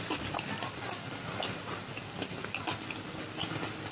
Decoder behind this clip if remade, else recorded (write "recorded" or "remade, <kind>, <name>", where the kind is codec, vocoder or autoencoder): recorded